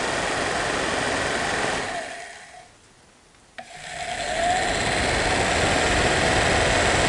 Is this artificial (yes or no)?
no